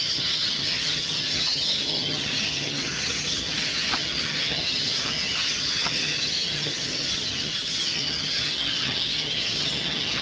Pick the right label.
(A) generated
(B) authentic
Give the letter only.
A